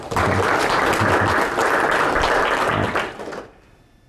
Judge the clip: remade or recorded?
recorded